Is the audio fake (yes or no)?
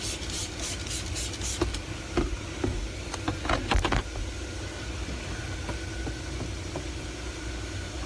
no